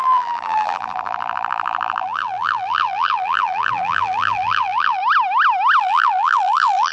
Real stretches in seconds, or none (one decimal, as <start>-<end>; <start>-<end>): 5.0-5.8

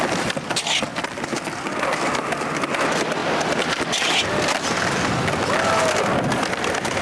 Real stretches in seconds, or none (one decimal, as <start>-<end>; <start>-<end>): 0.0-0.9; 1.8-7.0

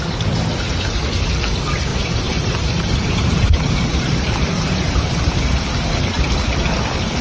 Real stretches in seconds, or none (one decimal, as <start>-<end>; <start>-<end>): 0.0-1.9; 5.2-7.2